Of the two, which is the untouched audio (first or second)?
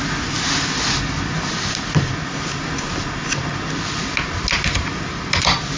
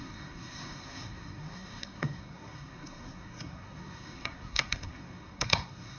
first